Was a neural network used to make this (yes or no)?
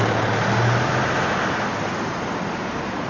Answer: no